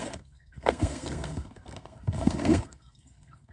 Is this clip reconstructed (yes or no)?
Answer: yes